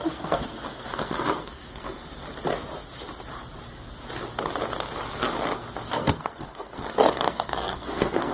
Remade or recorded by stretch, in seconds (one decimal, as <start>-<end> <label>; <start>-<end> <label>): 0.0-2.1 remade; 2.1-5.9 recorded; 5.9-8.3 remade